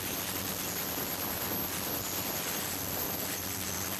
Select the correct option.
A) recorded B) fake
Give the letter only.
A